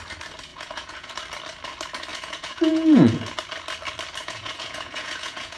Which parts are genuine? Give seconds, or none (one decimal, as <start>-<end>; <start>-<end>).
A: 0.0-0.5; 1.1-2.1; 3.2-4.2